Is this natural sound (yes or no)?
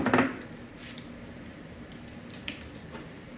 yes